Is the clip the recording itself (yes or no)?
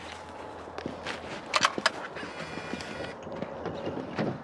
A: yes